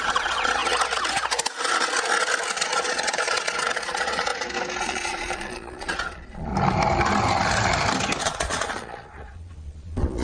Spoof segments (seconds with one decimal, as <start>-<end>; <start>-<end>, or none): 0.0-0.6; 2.5-4.3; 4.8-6.5; 8.2-10.2